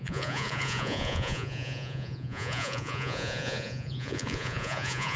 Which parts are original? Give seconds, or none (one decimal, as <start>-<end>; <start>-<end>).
none